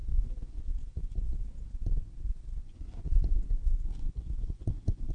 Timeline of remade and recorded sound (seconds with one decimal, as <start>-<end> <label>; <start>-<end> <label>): 0.0-0.6 remade; 0.6-2.6 recorded; 2.6-5.1 remade